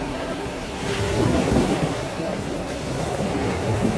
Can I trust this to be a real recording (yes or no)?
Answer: no